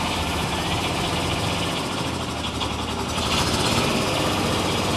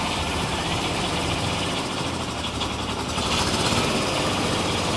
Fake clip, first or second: second